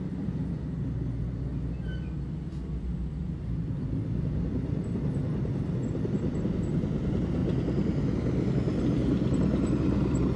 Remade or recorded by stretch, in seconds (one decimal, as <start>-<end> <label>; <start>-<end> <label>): 0.0-1.5 remade; 1.5-3.2 recorded; 3.2-7.4 remade; 7.4-8.8 recorded; 8.8-10.4 remade